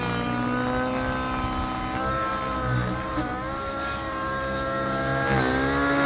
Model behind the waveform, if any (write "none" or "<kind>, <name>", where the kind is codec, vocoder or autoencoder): none